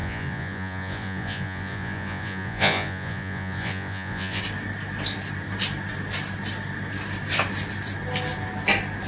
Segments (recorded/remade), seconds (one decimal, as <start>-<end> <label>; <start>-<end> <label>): 0.0-4.4 remade; 4.4-9.1 recorded